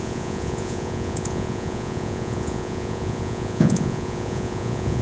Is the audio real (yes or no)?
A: no